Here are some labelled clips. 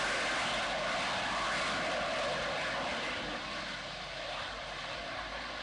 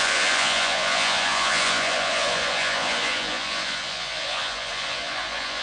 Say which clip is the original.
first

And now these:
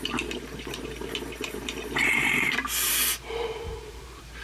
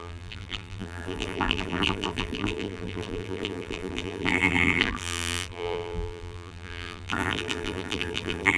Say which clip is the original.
first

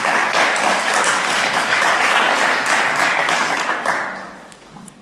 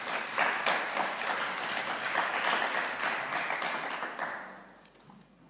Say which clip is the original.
second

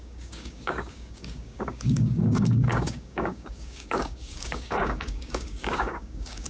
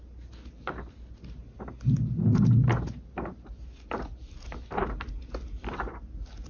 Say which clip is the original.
second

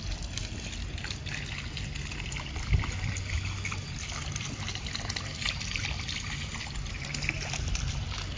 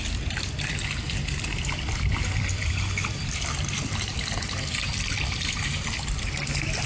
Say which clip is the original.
first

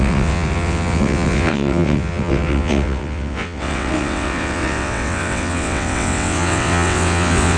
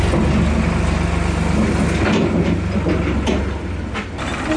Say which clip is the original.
second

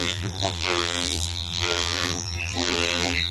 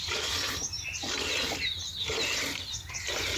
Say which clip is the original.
second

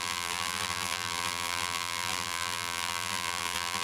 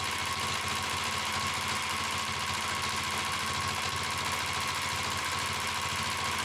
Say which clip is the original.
second